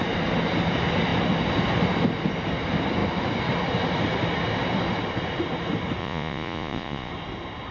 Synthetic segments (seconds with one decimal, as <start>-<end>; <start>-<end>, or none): 6.0-7.1